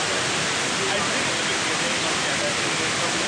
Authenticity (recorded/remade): recorded